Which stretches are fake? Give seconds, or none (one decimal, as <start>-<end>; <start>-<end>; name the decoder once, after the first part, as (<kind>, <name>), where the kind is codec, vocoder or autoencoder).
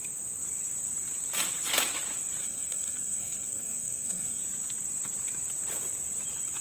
2.4-4.4 (codec, SNAC)